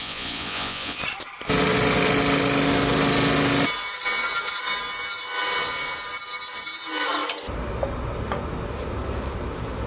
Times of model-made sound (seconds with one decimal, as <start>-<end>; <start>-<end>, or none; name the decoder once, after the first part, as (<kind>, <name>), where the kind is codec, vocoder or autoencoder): 0.0-1.0 (vocoder, Vocos)